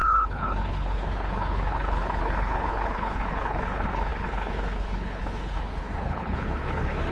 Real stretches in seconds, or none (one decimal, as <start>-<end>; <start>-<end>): none